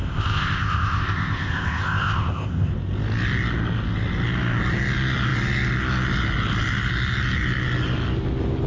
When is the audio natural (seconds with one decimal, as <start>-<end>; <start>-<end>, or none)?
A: 2.7-8.7